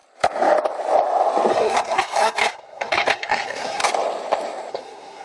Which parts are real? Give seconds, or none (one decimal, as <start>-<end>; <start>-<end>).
0.0-1.5; 3.8-4.7